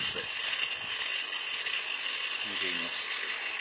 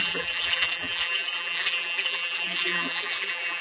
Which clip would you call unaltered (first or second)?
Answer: first